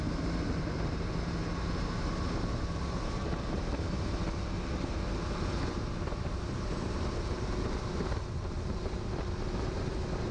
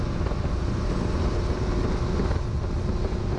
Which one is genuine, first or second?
second